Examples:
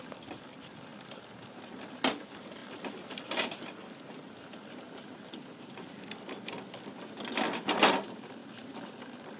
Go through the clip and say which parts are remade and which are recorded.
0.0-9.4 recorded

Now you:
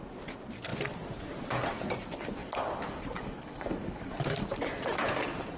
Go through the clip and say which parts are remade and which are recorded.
0.0-2.4 recorded; 2.4-4.2 remade; 4.2-5.6 recorded

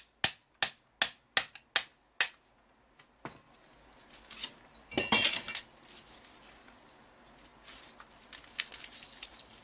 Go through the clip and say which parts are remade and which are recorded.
0.0-9.6 recorded